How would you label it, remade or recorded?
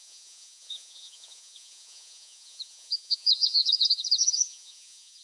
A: remade